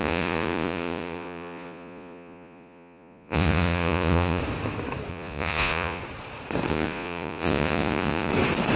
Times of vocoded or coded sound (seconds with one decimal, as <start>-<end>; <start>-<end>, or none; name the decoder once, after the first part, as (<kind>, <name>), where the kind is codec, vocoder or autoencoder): 0.0-4.4 (vocoder, Vocos); 5.1-6.0; 6.7-8.3